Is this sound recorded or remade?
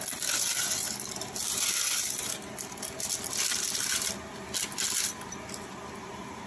recorded